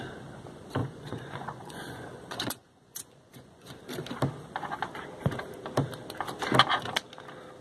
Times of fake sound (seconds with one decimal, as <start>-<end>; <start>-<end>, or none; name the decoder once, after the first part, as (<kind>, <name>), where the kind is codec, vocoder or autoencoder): 0.8-3.8 (vocoder, Vocos)